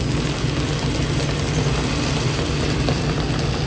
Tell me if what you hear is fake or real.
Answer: real